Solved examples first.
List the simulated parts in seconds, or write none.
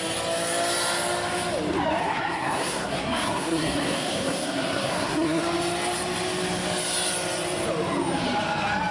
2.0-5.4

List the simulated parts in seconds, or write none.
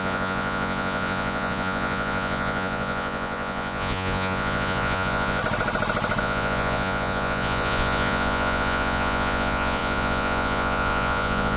0.0-5.4; 6.2-11.6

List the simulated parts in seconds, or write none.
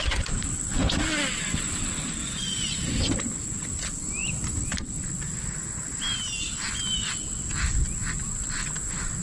2.2-3.0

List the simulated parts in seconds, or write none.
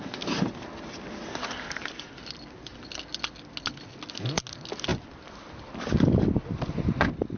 none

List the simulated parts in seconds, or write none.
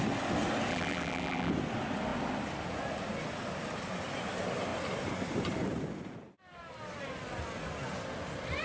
0.7-1.5